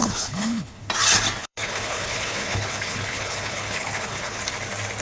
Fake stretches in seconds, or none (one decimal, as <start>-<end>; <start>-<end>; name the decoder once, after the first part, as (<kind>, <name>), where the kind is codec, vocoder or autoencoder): 0.0-0.9 (codec, HILCodec); 1.4-4.4